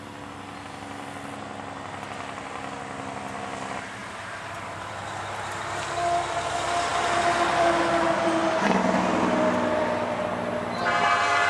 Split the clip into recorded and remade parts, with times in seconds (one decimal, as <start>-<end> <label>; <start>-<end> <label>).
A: 0.0-4.0 recorded; 4.0-4.9 remade; 4.9-11.5 recorded